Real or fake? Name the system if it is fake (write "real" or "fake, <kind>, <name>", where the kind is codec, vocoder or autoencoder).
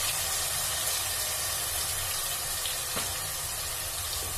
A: real